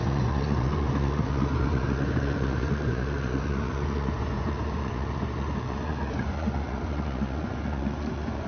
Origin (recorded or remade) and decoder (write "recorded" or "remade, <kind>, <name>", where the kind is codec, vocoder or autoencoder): remade, vocoder, Vocos